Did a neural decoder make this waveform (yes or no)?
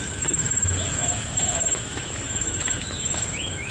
yes